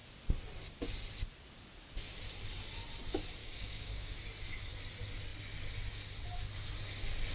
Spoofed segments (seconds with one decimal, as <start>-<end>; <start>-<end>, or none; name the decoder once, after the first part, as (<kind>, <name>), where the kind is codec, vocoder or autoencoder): 3.4-4.2 (codec, DAC)